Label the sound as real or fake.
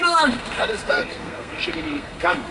fake